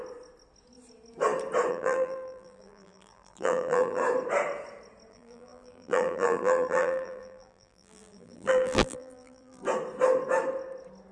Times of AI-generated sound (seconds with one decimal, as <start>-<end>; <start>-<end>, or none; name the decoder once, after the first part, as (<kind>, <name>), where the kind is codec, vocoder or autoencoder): 1.7-4.0 (vocoder, BigVGAN v2); 5.1-9.6